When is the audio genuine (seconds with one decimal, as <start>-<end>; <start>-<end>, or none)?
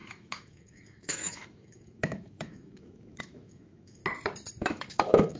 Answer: 4.0-4.6